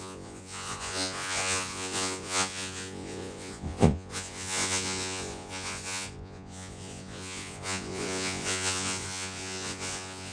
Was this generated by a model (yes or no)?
yes